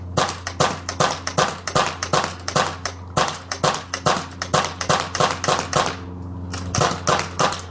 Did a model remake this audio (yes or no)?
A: no